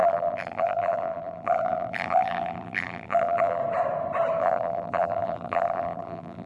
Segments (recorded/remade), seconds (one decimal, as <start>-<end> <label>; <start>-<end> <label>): 0.0-3.6 remade; 3.6-4.4 recorded; 4.4-6.5 remade